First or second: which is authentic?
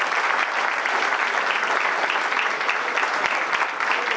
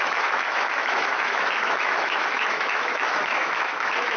first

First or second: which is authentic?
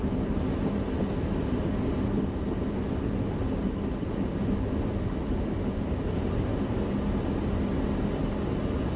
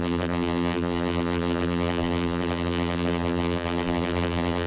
first